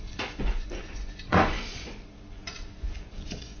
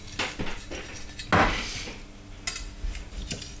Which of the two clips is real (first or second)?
second